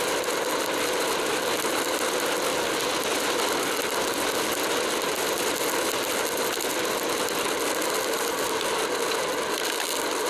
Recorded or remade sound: recorded